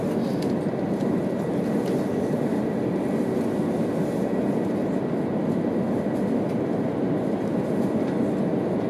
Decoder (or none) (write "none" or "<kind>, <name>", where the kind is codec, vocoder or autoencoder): none